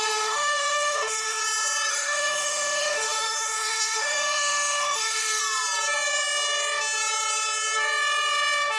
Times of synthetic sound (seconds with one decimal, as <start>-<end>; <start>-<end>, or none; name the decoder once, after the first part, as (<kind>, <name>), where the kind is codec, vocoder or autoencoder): 0.0-1.4 (autoencoder, DAC-VAE); 1.9-5.4

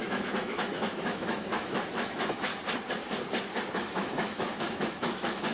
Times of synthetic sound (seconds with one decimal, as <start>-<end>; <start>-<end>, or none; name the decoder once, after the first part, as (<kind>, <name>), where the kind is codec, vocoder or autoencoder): 0.0-2.5 (autoencoder, DAC-VAE); 3.7-5.5

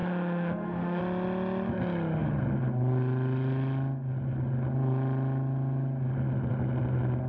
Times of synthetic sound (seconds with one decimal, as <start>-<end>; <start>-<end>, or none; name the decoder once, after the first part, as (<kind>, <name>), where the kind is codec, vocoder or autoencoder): 0.0-1.0 (autoencoder, DAC-VAE)

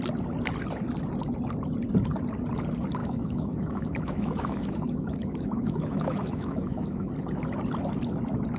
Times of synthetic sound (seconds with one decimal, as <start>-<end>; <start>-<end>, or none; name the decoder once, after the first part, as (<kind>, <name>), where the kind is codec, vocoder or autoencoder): 3.0-7.1 (autoencoder, DAC-VAE)

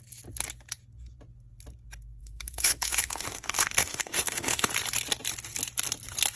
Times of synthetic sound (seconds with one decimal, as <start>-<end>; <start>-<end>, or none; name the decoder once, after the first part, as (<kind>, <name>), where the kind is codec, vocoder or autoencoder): 2.2-4.7 (autoencoder, DAC-VAE)

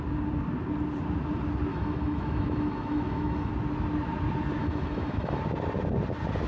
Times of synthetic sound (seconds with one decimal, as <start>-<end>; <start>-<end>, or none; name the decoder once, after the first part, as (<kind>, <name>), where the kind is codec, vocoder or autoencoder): 1.7-3.5 (autoencoder, DAC-VAE); 4.6-5.4

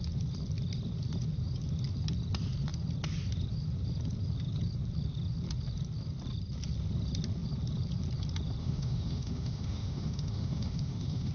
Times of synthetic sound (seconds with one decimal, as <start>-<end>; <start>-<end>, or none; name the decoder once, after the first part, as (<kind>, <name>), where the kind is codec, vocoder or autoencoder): 8.6-11.3 (autoencoder, DAC-VAE)

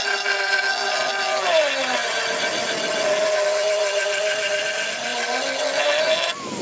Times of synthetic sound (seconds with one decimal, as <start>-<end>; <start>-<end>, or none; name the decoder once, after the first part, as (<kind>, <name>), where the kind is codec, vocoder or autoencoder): none